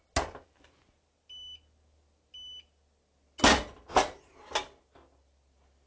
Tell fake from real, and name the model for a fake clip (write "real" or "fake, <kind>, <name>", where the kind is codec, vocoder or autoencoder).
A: real